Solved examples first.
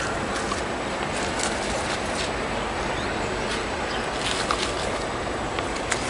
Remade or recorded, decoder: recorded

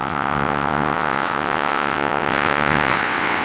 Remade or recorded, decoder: remade, vocoder, WaveNeXt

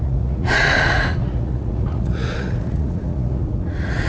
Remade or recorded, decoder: remade, vocoder, Vocos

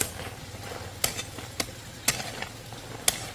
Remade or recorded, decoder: recorded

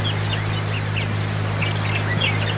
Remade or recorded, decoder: recorded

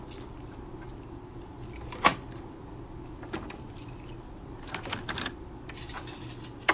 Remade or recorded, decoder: recorded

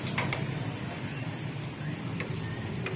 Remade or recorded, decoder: recorded